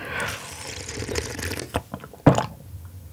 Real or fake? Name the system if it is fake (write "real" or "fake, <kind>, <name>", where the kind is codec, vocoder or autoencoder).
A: real